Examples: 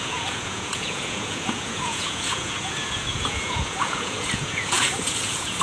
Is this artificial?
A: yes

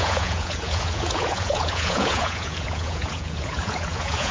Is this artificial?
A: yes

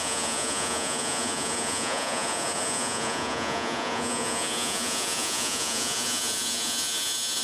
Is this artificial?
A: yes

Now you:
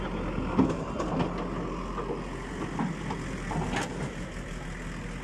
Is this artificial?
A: no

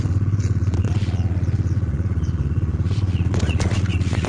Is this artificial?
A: yes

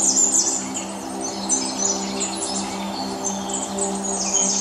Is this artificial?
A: no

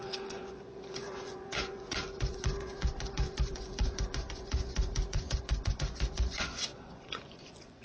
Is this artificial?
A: yes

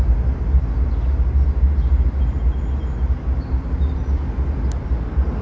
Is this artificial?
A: no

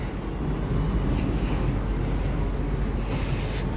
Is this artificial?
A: no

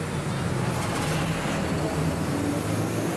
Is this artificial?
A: no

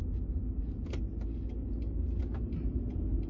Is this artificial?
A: no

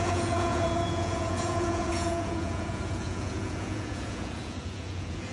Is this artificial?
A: yes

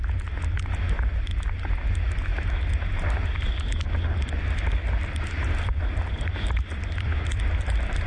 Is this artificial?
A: no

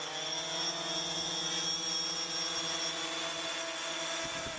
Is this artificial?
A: no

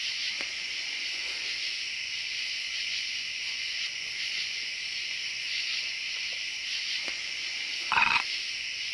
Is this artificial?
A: yes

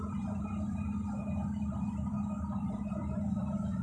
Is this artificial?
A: no